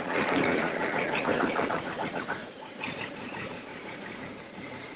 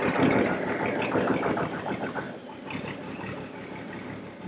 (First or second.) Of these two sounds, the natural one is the second